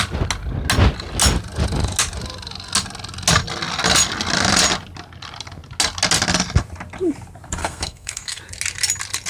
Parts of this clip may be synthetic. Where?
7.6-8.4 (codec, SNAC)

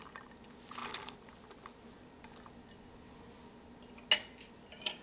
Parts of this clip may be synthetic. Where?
none

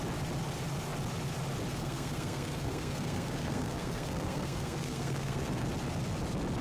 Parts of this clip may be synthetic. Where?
1.8-5.7 (codec, SNAC)

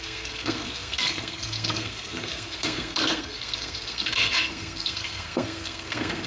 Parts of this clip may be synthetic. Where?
0.0-6.3 (codec, SNAC)

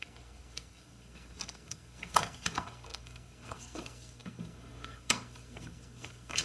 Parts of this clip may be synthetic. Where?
0.0-6.4 (codec, SNAC)

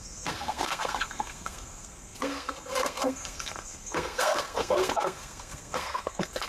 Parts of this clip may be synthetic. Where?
0.0-6.5 (codec, SNAC)